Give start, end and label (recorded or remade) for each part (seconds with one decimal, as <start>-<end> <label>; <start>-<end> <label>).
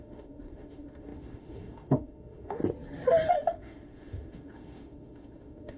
0.0-2.6 remade; 2.6-3.3 recorded; 3.3-5.8 remade